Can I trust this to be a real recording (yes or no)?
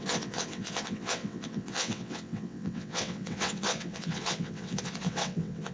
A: no